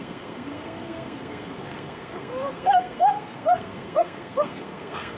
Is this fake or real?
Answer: fake